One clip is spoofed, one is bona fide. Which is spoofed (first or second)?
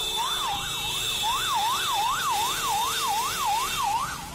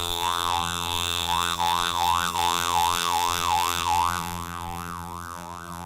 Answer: second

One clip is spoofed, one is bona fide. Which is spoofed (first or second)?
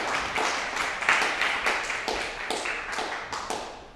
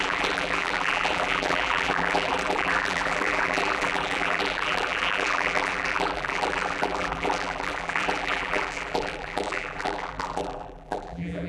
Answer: second